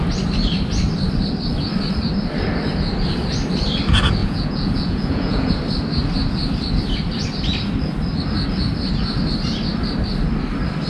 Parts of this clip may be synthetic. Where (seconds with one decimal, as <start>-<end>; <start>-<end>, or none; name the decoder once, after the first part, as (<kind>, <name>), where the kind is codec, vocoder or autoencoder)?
4.2-5.5 (vocoder, Vocos)